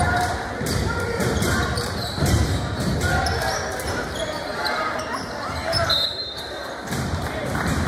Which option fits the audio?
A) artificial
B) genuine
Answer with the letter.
A